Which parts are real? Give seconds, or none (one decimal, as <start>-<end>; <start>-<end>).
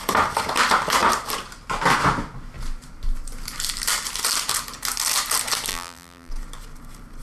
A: 0.0-5.7; 6.3-7.2